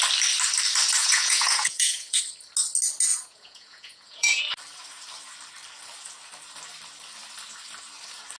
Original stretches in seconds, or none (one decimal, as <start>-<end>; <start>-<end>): 0.0-1.0; 2.2-3.1; 4.4-8.4